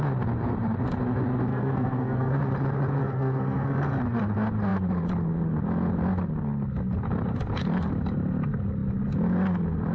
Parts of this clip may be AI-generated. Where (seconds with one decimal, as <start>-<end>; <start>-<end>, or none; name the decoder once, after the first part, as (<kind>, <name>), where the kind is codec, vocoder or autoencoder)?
1.5-2.4 (codec, SNAC); 3.0-4.0